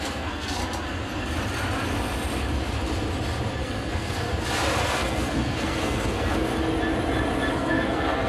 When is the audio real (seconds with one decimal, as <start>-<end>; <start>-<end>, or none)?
0.6-3.6; 4.3-4.8; 6.5-7.5